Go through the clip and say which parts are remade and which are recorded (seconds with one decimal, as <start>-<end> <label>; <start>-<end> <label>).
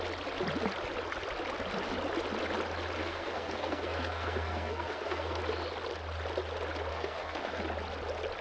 0.0-3.0 recorded; 3.0-5.4 remade; 5.4-6.9 recorded; 6.9-7.6 remade; 7.6-8.4 recorded